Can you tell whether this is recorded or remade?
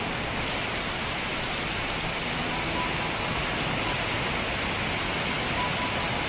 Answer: recorded